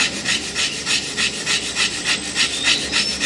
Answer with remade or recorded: recorded